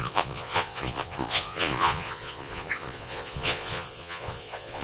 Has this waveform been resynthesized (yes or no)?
yes